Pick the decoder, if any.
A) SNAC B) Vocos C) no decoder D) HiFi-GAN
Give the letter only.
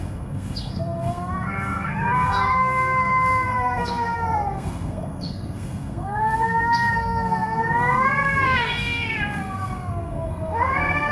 A